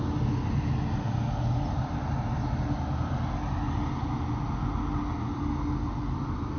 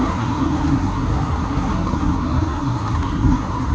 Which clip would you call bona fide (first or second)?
first